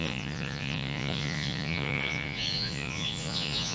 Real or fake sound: fake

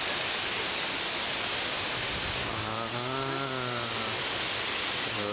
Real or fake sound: real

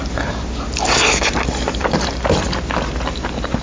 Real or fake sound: fake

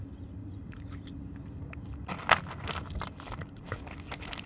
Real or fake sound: real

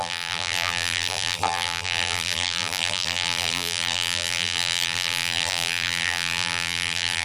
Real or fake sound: fake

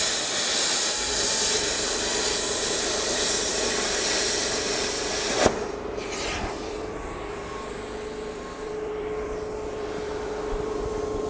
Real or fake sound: fake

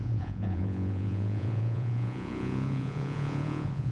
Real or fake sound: fake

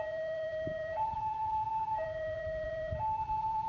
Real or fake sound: fake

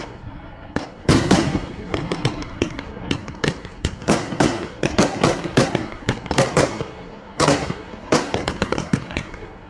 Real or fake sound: fake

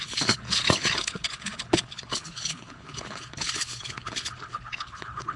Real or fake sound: fake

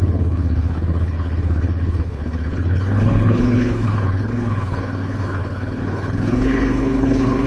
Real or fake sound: fake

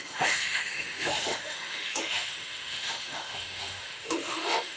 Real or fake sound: fake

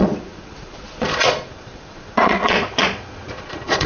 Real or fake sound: fake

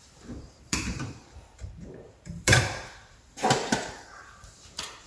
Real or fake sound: fake